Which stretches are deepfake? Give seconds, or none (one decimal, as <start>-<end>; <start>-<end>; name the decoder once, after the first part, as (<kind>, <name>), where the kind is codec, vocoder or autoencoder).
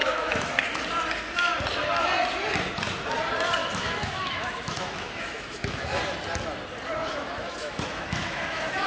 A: 0.0-0.8 (autoencoder, DAC-VAE); 3.6-6.0; 7.0-8.9